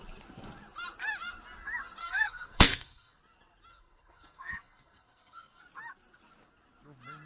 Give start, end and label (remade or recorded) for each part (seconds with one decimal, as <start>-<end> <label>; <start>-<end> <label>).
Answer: 0.0-2.0 recorded; 2.0-3.2 remade; 3.2-3.7 recorded; 3.7-5.6 remade; 5.6-7.3 recorded